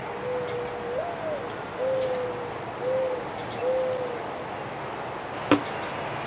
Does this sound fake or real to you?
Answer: real